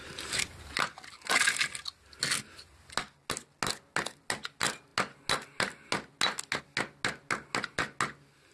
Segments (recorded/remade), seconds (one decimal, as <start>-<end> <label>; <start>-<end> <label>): 0.0-8.5 recorded